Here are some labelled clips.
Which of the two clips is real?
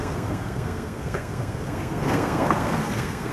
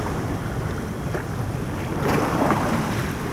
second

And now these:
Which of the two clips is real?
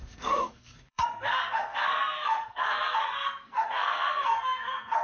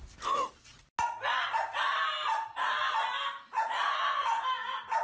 second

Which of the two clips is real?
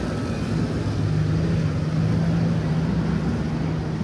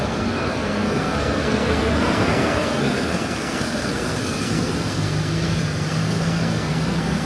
first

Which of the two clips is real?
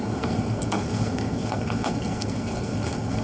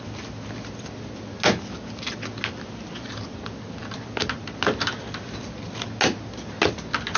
second